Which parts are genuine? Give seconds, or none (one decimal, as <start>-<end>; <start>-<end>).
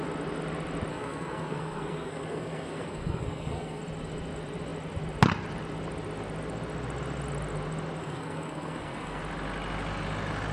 0.0-0.9; 3.8-8.0; 9.2-10.5